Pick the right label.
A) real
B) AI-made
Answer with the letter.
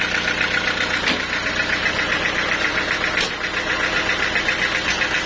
A